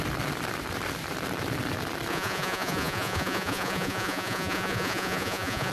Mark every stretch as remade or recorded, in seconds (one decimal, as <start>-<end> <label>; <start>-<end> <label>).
0.0-2.1 recorded; 2.1-5.7 remade